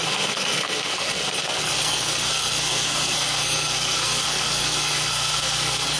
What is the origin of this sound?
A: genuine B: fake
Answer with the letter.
B